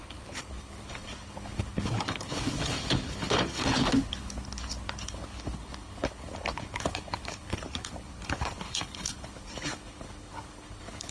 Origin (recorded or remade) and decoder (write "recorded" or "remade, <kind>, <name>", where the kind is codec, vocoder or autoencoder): remade, codec, HILCodec